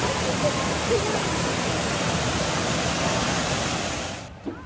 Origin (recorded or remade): recorded